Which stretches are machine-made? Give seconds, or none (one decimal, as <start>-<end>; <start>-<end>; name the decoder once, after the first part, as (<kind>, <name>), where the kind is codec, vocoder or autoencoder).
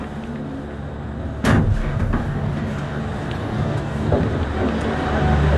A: 1.8-3.0 (codec, DAC); 3.4-4.1